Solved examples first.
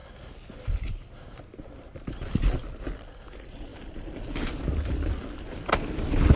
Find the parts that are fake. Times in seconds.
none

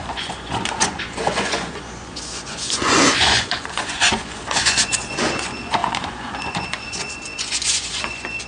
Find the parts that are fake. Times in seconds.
0.0-8.5 (vocoder, Vocos)

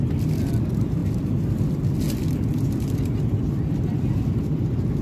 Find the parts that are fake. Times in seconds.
none

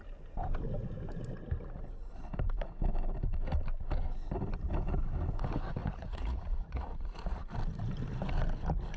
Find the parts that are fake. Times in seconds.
5.8-7.5 (vocoder, Vocos)